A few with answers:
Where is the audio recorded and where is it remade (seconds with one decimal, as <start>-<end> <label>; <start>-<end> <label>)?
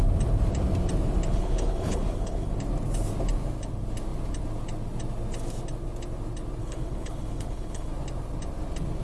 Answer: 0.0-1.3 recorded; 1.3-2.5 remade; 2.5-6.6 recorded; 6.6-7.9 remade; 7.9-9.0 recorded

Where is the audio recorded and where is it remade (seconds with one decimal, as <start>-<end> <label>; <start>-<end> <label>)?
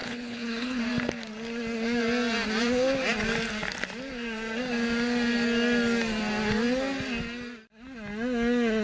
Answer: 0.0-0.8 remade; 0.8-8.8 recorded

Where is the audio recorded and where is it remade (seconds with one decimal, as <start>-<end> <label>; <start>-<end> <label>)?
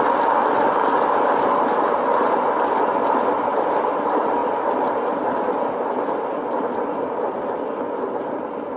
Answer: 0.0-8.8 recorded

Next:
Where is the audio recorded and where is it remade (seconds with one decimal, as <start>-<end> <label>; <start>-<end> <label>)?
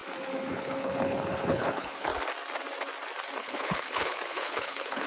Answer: 0.0-0.5 recorded; 0.5-2.1 remade; 2.1-3.4 recorded; 3.4-5.1 remade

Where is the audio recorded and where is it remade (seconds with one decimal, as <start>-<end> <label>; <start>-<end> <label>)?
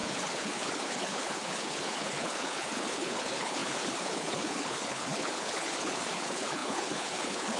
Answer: 0.0-7.6 remade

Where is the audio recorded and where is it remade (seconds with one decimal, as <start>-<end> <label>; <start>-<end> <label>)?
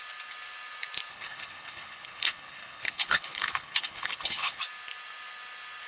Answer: 0.0-1.1 recorded; 1.1-4.6 remade; 4.6-5.9 recorded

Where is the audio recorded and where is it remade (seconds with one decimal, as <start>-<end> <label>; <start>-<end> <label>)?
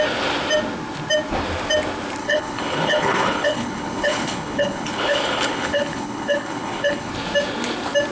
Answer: 0.0-2.2 recorded; 2.2-7.1 remade; 7.1-8.1 recorded